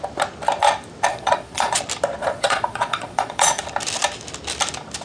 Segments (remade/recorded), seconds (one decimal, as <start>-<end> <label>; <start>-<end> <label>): 0.0-1.1 recorded; 1.1-1.8 remade; 1.8-2.2 recorded; 2.2-3.6 remade; 3.6-5.0 recorded